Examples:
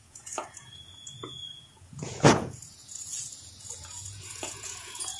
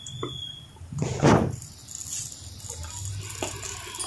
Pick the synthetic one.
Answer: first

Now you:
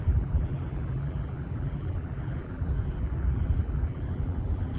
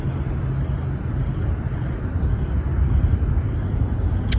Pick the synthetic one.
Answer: first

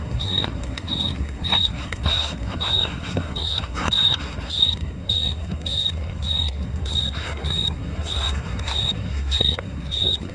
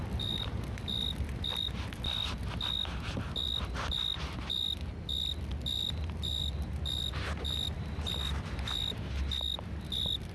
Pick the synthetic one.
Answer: first